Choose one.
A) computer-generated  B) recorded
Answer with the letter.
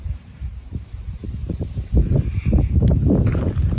A